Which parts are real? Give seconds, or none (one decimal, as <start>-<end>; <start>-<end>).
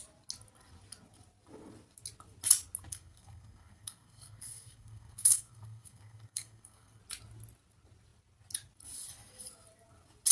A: 0.0-2.9; 7.0-10.3